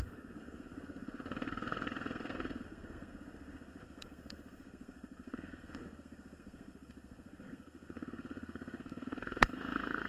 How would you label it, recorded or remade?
remade